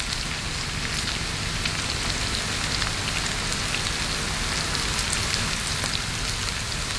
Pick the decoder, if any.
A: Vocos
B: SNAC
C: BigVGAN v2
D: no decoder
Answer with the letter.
D